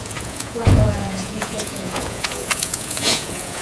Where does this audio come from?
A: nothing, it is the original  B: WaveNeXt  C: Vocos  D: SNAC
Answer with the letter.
C